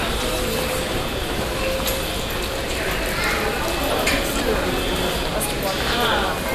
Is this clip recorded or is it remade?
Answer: recorded